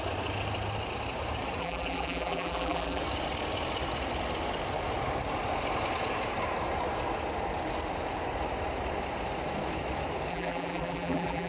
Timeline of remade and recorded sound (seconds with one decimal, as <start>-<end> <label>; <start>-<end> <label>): 0.0-1.6 recorded; 1.6-3.0 remade; 3.0-10.3 recorded; 10.3-11.5 remade